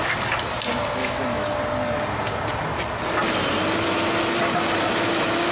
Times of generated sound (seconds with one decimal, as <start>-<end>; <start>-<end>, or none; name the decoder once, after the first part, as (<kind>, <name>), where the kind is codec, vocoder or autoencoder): 1.0-1.6 (autoencoder, DAC-VAE)